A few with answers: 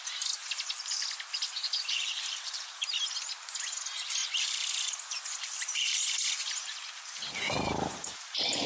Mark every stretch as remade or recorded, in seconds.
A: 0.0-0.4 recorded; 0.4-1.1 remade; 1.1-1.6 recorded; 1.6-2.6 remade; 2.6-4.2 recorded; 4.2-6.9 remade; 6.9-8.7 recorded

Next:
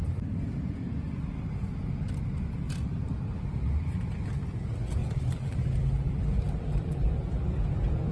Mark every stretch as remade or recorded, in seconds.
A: 0.0-5.0 recorded; 5.0-7.2 remade; 7.2-8.1 recorded

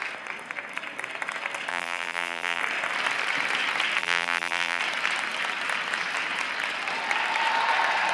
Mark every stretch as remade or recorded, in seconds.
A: 0.0-1.7 recorded; 1.7-2.6 remade; 2.6-4.0 recorded; 4.0-4.8 remade; 4.8-8.1 recorded